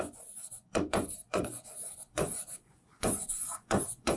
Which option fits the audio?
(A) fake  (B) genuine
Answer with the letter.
A